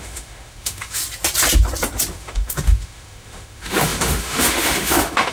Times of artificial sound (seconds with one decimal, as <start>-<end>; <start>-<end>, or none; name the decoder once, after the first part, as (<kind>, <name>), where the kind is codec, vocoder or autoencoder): 0.0-1.0 (autoencoder, DAC-VAE); 2.1-5.3